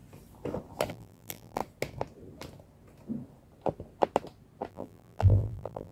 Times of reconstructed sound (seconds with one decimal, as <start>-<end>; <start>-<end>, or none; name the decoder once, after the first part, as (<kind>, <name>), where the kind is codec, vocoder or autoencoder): 0.9-1.6 (vocoder, BigVGAN v2); 4.7-5.9